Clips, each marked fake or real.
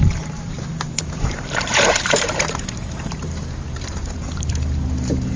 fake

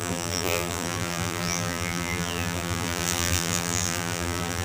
fake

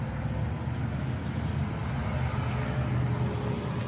real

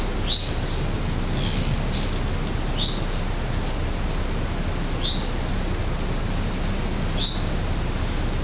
real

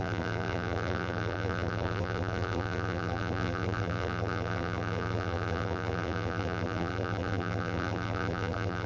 fake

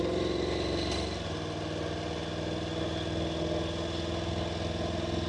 real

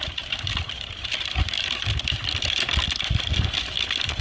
fake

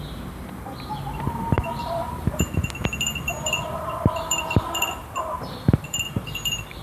fake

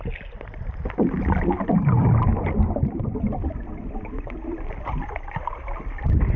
fake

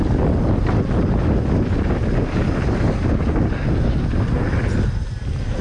real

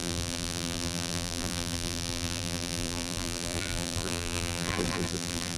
fake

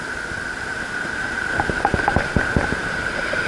real